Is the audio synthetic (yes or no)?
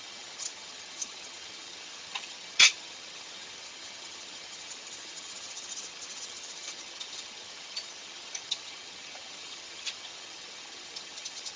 yes